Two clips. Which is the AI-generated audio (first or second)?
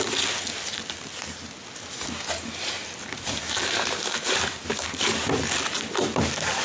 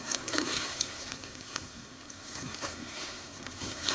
second